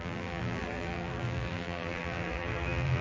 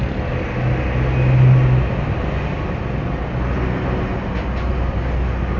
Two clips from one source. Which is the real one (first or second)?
second